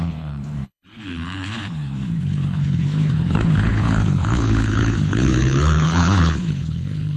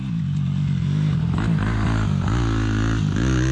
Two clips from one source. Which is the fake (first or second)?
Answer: first